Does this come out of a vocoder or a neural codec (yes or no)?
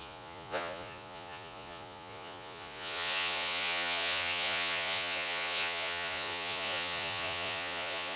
yes